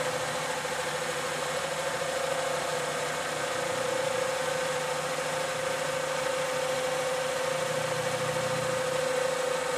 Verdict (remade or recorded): recorded